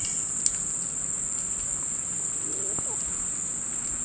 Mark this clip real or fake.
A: real